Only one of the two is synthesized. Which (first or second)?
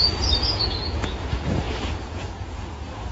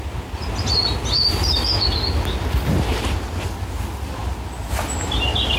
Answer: first